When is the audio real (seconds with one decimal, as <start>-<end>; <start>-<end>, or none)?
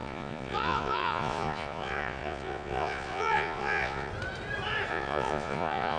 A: 4.1-4.9